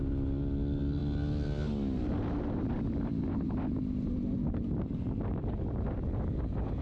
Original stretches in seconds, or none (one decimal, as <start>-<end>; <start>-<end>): 0.0-6.8